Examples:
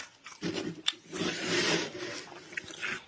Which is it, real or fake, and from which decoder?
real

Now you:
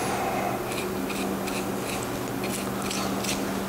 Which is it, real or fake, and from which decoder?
real